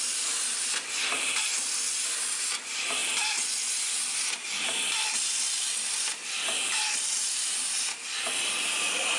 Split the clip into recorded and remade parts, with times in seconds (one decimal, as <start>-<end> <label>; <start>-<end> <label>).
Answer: 0.0-3.0 remade; 3.0-3.7 recorded; 3.7-9.2 remade